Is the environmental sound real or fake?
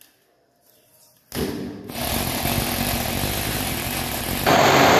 real